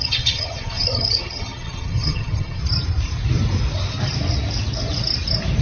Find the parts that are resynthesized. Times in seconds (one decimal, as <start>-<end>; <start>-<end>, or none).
0.0-2.6